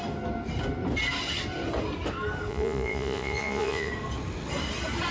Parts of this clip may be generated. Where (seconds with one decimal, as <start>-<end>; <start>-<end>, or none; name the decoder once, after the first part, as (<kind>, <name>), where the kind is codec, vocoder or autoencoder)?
2.5-3.9 (vocoder, Vocos)